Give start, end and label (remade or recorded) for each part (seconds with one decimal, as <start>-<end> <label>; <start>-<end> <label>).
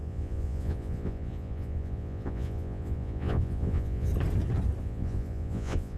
0.0-4.1 remade; 4.1-4.8 recorded; 4.8-6.0 remade